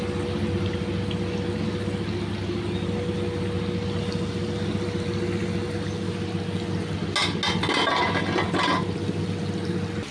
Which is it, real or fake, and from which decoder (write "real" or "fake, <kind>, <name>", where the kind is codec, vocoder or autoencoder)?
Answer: real